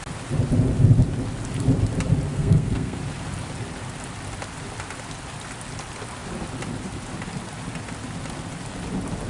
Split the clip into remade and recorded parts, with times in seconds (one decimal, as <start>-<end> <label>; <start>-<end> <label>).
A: 0.0-2.3 recorded; 2.3-3.0 remade; 3.0-9.3 recorded